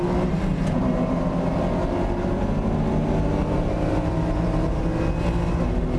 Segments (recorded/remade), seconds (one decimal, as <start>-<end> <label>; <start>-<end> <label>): 0.0-0.8 recorded; 0.8-1.6 remade; 1.6-3.4 recorded; 3.4-4.8 remade; 4.8-6.0 recorded